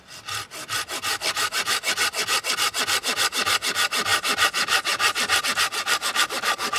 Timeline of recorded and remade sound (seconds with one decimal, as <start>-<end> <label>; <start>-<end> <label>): 0.0-4.1 recorded; 4.1-5.4 remade; 5.4-6.8 recorded